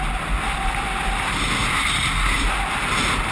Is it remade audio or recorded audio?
recorded